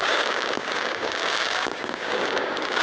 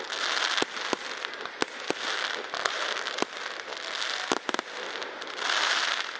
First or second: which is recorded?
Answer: second